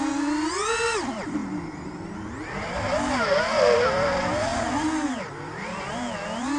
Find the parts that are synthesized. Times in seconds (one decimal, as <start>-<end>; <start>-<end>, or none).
none